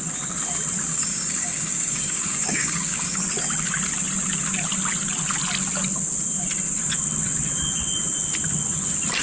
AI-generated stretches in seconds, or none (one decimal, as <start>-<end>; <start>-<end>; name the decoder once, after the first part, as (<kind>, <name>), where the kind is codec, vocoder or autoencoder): 0.9-3.2 (codec, DAC)